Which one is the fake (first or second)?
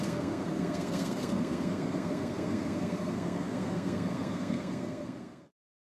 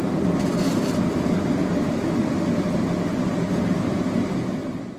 first